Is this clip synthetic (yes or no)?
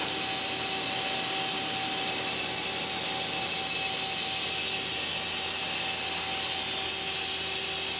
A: no